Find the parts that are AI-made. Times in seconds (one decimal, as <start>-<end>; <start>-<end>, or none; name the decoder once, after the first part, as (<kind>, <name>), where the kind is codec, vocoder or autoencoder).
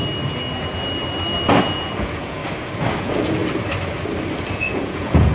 1.6-2.4 (vocoder, Vocos); 3.0-3.4; 4.5-5.3